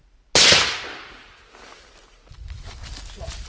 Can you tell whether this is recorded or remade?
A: recorded